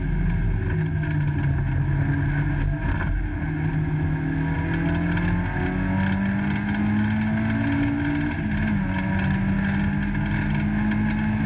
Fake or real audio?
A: real